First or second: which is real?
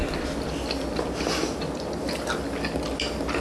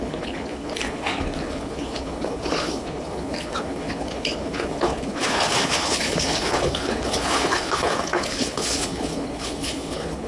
first